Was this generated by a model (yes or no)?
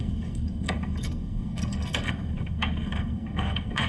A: yes